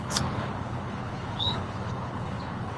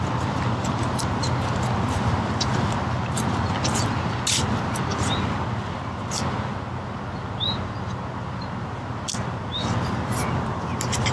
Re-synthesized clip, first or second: first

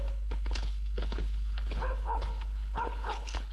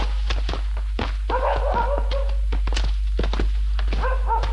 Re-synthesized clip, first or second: first